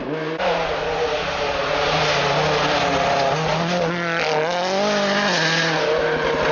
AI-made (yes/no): no